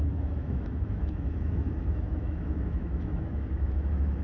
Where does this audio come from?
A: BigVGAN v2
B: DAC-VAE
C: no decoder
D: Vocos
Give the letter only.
B